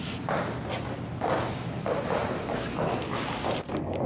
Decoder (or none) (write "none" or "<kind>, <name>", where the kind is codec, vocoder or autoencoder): none